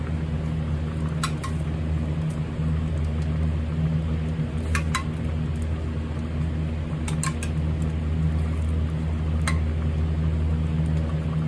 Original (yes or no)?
yes